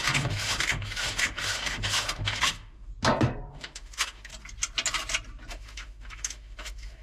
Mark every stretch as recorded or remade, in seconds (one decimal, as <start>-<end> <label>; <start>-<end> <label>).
0.0-2.9 remade; 2.9-3.5 recorded; 3.5-4.3 remade; 4.3-5.5 recorded; 5.5-7.0 remade